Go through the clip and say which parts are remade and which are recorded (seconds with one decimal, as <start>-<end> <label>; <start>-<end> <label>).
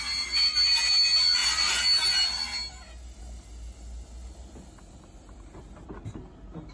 0.0-6.7 recorded